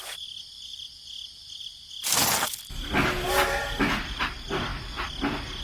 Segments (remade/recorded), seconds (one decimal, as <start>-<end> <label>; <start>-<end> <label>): 0.0-5.6 recorded